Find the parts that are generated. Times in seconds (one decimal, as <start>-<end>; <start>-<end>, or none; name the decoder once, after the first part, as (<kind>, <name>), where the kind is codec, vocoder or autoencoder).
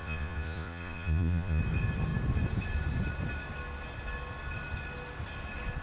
0.0-1.6 (vocoder, Vocos)